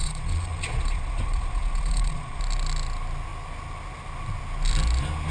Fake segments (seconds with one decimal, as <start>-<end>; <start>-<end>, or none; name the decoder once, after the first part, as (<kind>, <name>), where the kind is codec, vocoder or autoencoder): 0.0-2.4 (vocoder, Vocos)